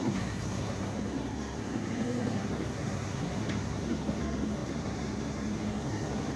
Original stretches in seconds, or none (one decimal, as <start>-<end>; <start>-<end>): none